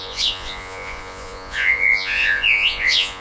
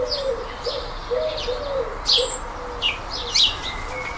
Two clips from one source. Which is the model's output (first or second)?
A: first